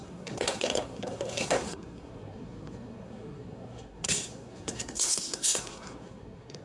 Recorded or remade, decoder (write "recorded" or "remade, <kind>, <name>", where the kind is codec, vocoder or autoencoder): remade, codec, SNAC